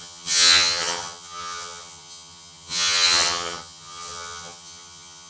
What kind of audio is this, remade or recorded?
remade